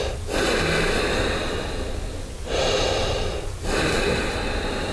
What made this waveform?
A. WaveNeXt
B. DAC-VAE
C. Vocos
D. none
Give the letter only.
D